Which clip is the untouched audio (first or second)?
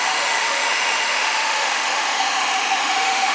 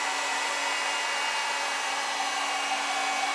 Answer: second